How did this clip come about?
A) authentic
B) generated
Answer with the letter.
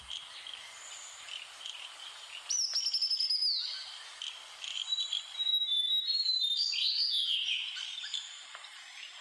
A